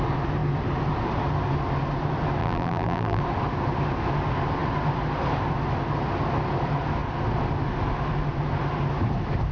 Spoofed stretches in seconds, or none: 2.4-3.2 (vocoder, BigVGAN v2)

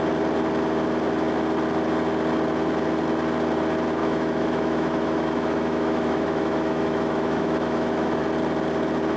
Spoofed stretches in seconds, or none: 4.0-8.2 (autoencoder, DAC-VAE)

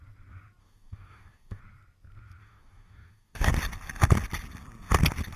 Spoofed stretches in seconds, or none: 0.6-1.6 (codec, DAC); 2.4-3.5

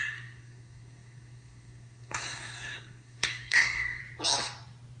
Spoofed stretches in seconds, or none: 0.0-4.0 (codec, SNAC)

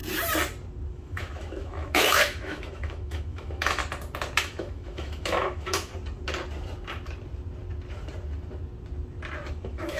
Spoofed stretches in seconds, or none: 0.9-3.8 (autoencoder, DAC-VAE); 4.4-5.9; 9.5-10.0